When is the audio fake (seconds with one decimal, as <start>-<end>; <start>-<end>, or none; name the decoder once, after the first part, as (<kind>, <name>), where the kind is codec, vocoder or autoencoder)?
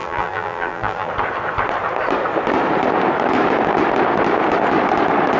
0.0-1.1 (vocoder, BigVGAN v2)